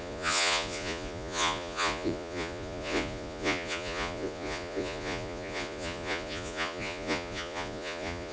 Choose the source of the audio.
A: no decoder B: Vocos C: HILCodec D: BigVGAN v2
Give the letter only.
B